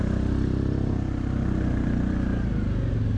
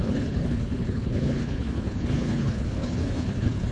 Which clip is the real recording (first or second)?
first